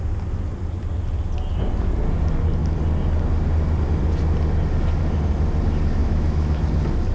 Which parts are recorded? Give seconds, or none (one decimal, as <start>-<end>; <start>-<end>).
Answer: 0.0-6.0; 6.6-7.1